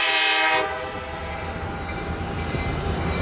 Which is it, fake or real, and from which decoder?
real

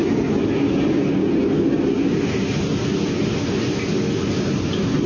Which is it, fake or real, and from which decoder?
real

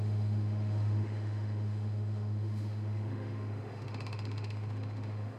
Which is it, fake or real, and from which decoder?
fake, autoencoder, DAC-VAE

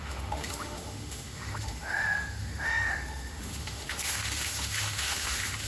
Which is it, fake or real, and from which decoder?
fake, autoencoder, DAC-VAE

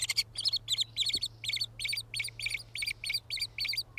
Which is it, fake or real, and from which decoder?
real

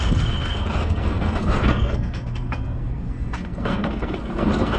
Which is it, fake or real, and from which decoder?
fake, codec, SNAC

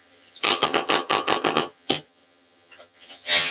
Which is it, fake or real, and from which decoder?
fake, vocoder, HiFi-GAN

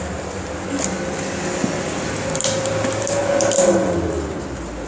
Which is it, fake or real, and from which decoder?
real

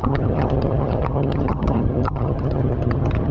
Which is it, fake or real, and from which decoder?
fake, vocoder, HiFi-GAN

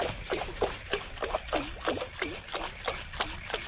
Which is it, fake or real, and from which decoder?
real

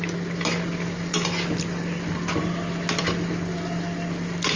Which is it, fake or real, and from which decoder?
real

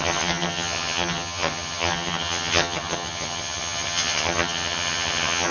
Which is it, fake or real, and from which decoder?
fake, vocoder, HiFi-GAN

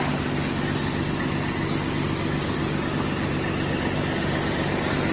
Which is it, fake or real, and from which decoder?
real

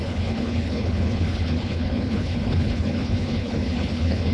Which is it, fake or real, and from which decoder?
fake, codec, HILCodec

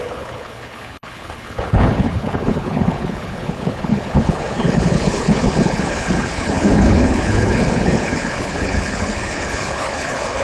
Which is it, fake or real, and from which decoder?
fake, codec, HILCodec